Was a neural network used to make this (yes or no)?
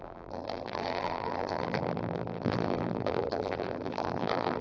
yes